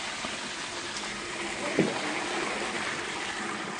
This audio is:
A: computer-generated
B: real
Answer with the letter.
B